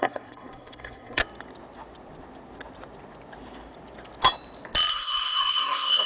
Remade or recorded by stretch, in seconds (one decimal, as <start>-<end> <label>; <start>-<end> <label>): 0.0-1.2 remade; 1.2-4.9 recorded; 4.9-6.1 remade